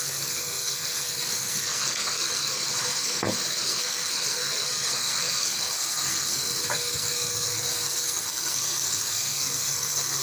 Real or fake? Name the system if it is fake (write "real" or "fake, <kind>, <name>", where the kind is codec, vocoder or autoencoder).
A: fake, codec, SNAC